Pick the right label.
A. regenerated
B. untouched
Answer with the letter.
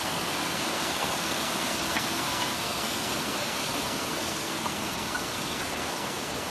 A